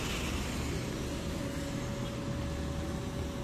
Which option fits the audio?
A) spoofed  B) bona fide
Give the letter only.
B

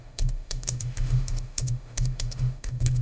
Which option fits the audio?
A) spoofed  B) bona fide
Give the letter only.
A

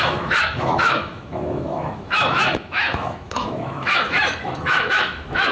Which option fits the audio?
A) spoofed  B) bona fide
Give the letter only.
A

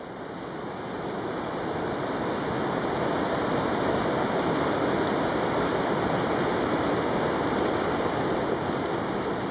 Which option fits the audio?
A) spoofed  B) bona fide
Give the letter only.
B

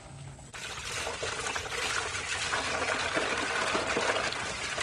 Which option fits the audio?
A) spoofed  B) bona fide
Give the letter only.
B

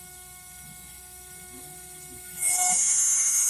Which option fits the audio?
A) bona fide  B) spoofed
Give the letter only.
B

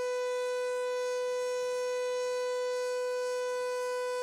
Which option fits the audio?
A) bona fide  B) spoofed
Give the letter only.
A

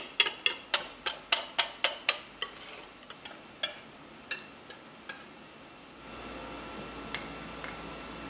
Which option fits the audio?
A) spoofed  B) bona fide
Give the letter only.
B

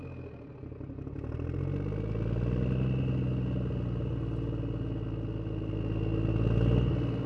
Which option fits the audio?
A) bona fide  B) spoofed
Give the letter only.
A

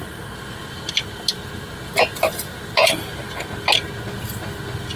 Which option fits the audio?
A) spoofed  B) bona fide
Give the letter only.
B